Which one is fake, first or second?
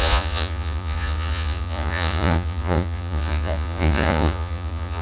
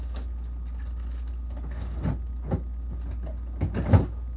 first